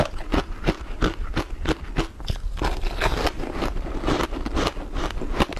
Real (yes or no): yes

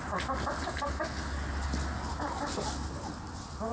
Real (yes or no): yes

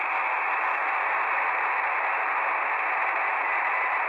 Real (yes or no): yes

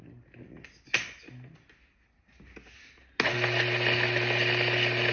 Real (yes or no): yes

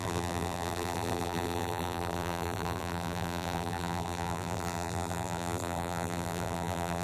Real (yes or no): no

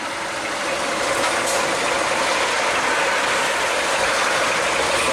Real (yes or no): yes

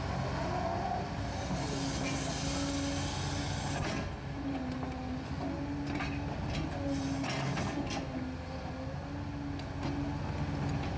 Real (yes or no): yes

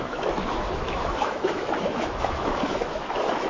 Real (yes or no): no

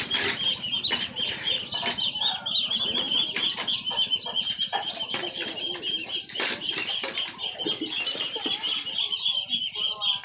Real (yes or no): yes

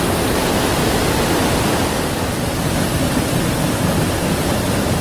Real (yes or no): yes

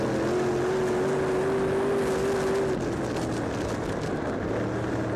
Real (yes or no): yes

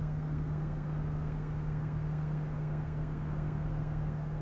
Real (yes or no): no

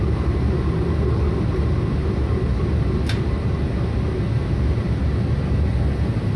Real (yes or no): yes